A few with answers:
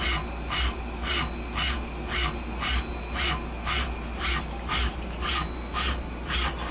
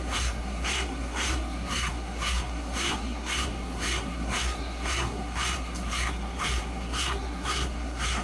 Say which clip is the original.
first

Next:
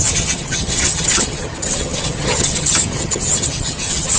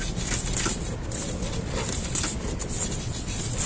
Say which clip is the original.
second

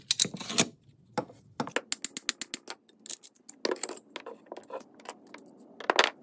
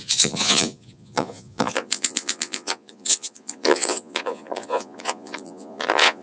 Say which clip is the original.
first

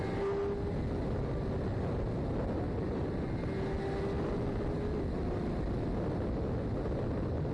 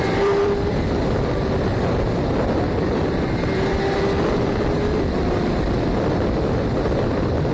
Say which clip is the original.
first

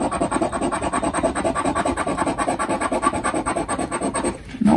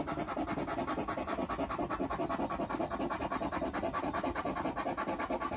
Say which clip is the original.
second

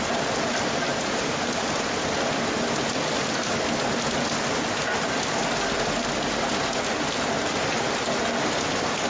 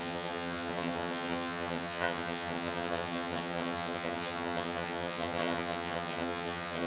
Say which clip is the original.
first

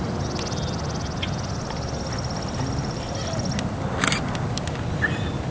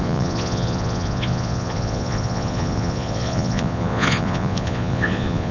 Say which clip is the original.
first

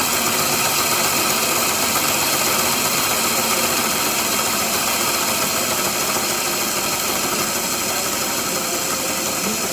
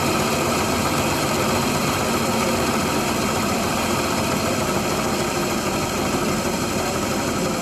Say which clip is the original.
first